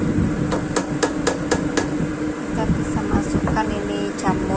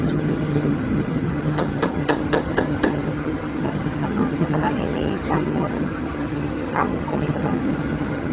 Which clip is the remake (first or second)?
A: second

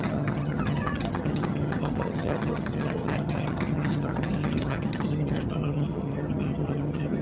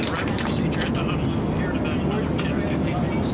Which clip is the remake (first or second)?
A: first